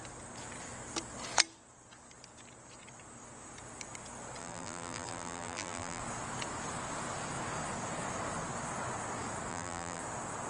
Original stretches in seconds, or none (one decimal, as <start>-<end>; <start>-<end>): 0.0-4.4; 6.0-9.5; 10.0-10.5

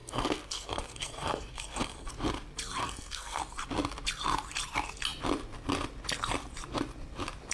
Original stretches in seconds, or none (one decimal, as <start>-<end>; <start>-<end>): 2.1-2.8; 3.4-7.5

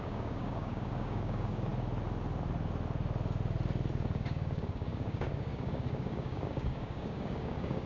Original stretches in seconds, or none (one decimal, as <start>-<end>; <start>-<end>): 1.7-3.9

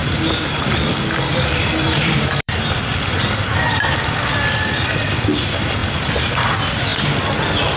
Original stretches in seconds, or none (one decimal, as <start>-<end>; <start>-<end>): 3.9-7.8

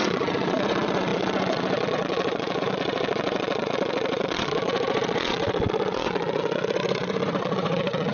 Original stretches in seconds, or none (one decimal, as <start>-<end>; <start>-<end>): none